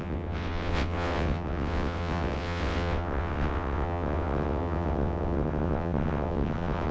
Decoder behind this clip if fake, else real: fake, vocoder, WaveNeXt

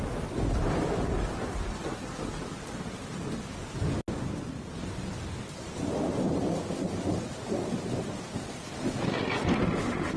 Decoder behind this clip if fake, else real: real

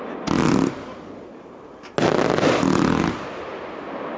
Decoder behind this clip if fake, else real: real